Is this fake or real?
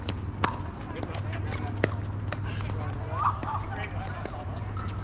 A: real